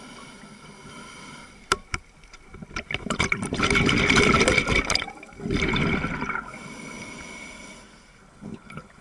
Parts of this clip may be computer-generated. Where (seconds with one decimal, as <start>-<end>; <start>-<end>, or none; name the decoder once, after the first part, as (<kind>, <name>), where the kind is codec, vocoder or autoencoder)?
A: 8.3-9.0 (codec, HILCodec)